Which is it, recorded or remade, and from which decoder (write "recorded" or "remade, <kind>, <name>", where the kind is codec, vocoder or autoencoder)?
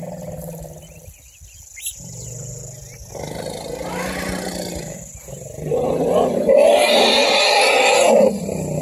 recorded